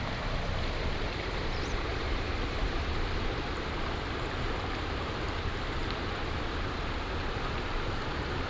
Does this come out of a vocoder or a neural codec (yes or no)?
yes